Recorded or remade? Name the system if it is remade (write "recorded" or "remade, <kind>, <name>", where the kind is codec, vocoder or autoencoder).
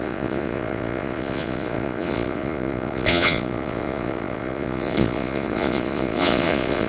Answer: remade, vocoder, Vocos